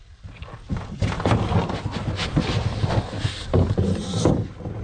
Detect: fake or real real